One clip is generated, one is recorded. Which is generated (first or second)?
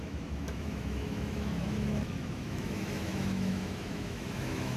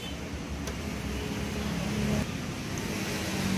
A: first